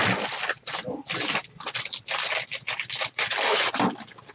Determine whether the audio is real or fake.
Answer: fake